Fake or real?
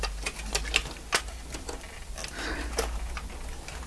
real